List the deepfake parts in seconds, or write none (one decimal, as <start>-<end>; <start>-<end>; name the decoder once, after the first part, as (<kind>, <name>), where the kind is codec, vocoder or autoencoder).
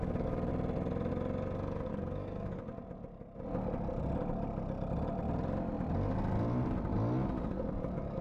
0.0-0.5 (codec, DAC); 1.9-2.6; 7.5-8.2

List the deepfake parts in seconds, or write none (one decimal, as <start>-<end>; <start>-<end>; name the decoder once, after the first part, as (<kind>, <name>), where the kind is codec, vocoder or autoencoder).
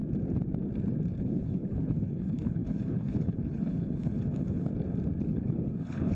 1.2-4.7 (codec, HILCodec); 5.2-6.2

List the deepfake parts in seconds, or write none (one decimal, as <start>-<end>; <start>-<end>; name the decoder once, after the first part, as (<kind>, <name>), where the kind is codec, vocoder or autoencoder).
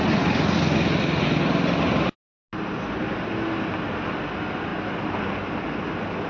none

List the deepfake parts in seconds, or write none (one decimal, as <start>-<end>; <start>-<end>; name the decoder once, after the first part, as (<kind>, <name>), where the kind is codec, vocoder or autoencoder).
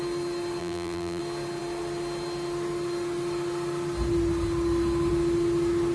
0.6-1.2 (vocoder, BigVGAN v2)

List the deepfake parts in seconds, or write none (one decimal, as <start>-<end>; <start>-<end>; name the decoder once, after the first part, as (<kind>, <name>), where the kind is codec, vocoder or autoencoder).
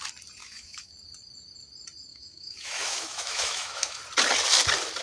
0.4-0.9 (autoencoder, DAC-VAE); 2.1-4.0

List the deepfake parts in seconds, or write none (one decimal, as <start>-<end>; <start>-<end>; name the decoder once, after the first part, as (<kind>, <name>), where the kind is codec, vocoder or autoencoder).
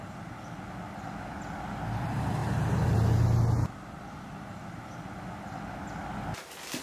none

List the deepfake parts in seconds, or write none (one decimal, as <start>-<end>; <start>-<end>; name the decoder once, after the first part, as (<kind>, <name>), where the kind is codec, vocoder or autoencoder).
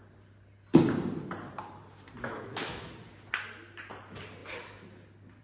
2.3-2.9 (autoencoder, DAC-VAE)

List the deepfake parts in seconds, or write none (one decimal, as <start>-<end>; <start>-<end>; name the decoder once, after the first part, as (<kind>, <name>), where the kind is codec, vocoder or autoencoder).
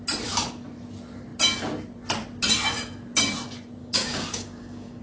3.8-5.0 (codec, DAC)